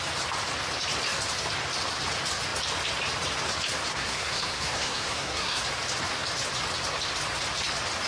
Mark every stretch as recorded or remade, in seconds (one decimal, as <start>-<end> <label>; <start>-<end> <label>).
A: 0.0-3.9 recorded; 3.9-5.6 remade; 5.6-8.1 recorded

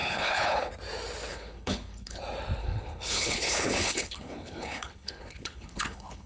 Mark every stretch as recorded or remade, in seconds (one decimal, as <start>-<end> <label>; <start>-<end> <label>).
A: 0.0-0.7 remade; 0.7-1.3 recorded; 1.3-2.2 remade; 2.2-2.6 recorded; 2.6-6.3 remade

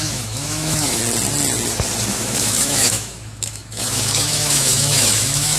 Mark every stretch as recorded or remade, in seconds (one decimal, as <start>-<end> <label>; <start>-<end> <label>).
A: 0.0-1.0 remade; 1.0-2.1 recorded; 2.1-5.6 remade

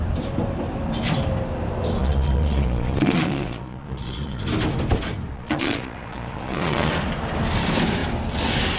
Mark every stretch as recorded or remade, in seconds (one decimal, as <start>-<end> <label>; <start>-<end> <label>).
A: 0.0-2.0 recorded; 2.0-4.4 remade; 4.4-5.3 recorded; 5.3-6.9 remade; 6.9-8.8 recorded

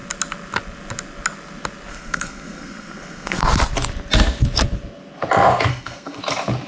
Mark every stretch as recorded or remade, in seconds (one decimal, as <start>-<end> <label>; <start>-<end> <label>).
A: 0.0-1.9 recorded; 1.9-3.4 remade; 3.4-5.7 recorded; 5.7-6.2 remade; 6.2-6.7 recorded